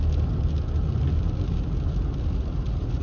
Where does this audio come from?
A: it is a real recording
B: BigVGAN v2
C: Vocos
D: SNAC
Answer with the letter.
A